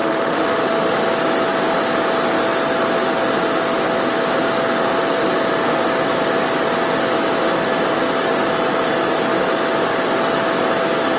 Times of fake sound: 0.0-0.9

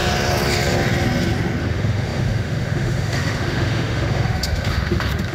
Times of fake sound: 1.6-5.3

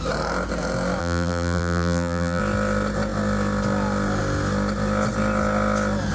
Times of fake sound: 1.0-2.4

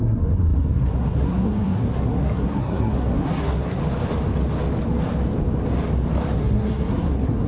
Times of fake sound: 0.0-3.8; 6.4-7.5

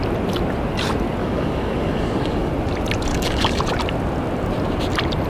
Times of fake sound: 1.2-2.5; 3.1-3.6

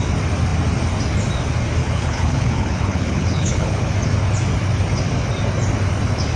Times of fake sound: 1.8-3.9